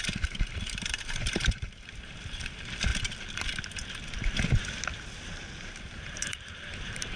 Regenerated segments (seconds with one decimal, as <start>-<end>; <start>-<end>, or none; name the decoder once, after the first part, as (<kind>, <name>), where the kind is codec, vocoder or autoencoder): 0.0-2.9 (vocoder, BigVGAN v2); 5.8-7.2